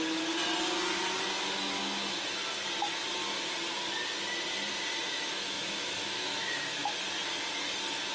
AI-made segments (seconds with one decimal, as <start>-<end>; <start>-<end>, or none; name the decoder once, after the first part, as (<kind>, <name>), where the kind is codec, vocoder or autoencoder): 0.0-0.4 (autoencoder, DAC-VAE); 5.2-6.8

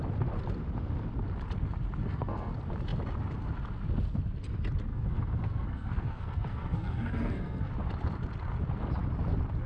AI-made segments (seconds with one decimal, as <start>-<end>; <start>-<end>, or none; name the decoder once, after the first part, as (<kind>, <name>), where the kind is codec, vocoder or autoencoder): 2.0-2.5 (codec, SNAC); 4.9-7.7